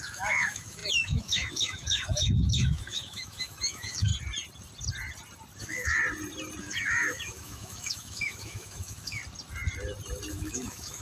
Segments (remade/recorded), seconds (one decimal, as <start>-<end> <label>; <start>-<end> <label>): 0.0-4.1 remade; 4.1-5.6 recorded; 5.6-6.0 remade; 6.0-6.6 recorded; 6.6-9.2 remade; 9.2-10.3 recorded; 10.3-11.0 remade